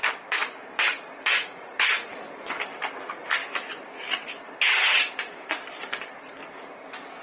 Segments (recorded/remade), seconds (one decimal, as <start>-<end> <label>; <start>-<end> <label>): 0.0-7.2 recorded